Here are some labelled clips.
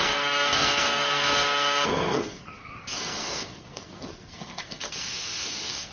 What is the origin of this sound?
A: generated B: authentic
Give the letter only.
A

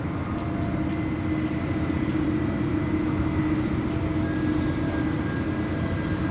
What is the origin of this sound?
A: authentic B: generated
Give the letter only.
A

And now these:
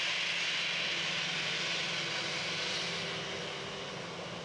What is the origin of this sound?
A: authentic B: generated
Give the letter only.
A